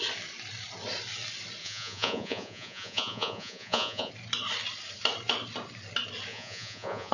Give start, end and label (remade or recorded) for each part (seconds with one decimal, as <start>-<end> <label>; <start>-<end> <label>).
0.0-1.6 recorded; 1.6-4.1 remade; 4.1-6.3 recorded; 6.3-7.1 remade